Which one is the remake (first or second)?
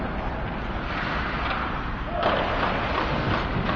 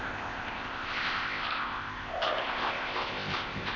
second